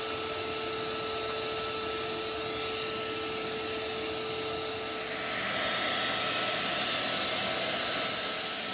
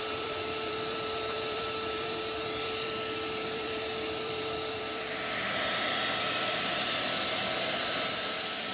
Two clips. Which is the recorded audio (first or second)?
first